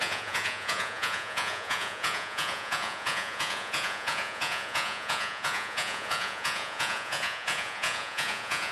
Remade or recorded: remade